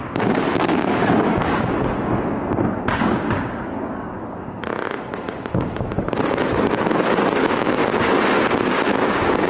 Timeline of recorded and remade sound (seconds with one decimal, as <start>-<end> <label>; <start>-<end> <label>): 0.0-7.8 remade; 7.8-8.6 recorded; 8.6-9.5 remade